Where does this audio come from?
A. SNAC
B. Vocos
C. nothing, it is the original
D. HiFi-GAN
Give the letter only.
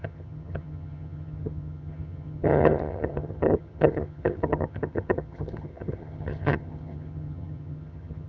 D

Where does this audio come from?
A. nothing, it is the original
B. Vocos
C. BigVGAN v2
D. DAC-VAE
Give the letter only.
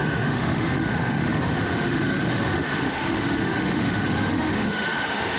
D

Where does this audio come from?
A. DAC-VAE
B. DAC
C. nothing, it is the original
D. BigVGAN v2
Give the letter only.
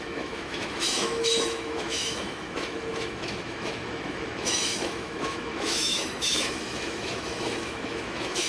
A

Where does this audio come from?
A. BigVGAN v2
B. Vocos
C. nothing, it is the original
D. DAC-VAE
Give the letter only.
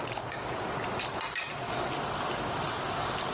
C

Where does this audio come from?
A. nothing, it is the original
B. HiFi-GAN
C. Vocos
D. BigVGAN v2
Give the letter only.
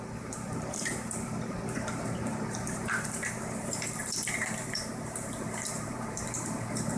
D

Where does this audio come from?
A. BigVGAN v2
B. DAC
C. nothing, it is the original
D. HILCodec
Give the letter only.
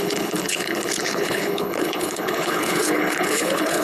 D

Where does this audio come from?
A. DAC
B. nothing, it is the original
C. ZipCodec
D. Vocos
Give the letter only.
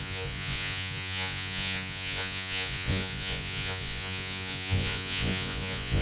D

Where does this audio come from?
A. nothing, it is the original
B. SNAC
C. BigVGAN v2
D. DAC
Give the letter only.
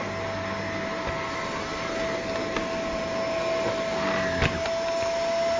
A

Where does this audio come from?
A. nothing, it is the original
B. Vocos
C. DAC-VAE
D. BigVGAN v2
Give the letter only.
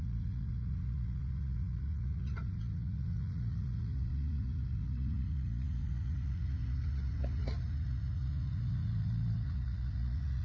B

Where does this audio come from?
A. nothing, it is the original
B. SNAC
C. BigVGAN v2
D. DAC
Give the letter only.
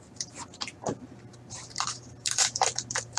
C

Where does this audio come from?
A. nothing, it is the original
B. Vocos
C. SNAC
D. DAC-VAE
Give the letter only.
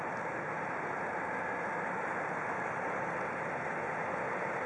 A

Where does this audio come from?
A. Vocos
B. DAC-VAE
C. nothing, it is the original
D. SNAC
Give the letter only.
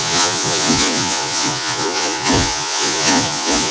A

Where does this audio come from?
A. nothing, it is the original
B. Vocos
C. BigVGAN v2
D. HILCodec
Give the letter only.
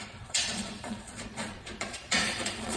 B